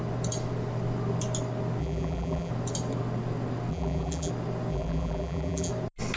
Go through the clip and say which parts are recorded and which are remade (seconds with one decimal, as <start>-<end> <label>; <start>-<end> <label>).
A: 0.0-1.8 recorded; 1.8-2.5 remade; 2.5-3.7 recorded; 3.7-4.3 remade; 4.3-4.7 recorded; 4.7-5.7 remade; 5.7-6.2 recorded